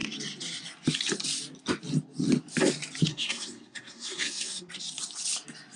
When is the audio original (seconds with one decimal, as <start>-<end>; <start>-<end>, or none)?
0.0-3.1; 4.7-5.8